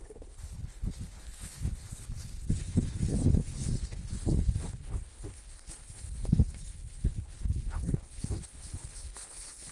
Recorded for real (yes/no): no